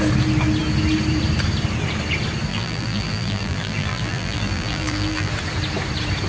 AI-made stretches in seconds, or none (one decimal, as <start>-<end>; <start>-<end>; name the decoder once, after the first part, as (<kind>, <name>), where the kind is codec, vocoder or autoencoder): 2.5-5.3 (vocoder, BigVGAN v2)